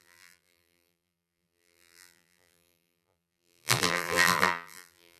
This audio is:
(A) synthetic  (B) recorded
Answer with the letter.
A